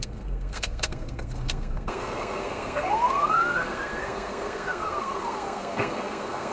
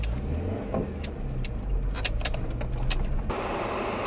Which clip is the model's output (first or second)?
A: first